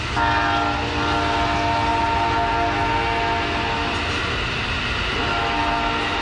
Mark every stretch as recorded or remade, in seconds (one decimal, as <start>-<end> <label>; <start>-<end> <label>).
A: 0.0-6.2 recorded